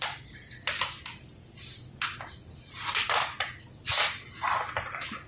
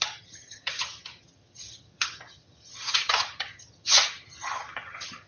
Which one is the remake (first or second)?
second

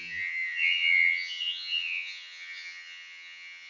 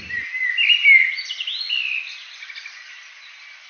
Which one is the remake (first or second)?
first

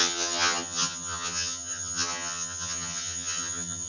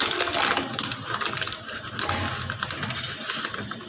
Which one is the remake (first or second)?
first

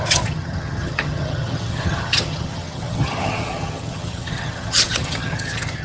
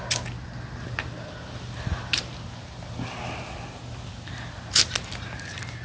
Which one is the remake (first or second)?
first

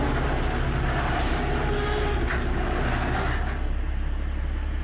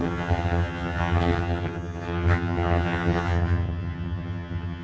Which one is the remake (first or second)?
second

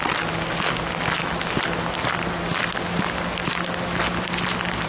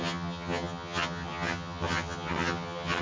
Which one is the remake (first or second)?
second